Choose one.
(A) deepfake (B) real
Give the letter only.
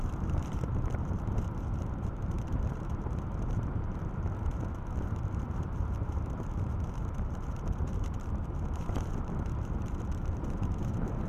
A